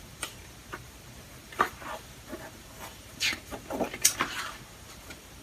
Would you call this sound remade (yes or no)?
yes